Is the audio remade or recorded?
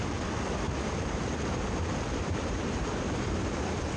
recorded